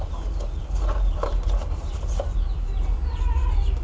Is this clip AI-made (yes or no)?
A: no